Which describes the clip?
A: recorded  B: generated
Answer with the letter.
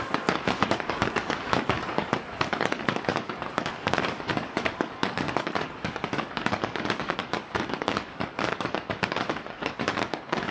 B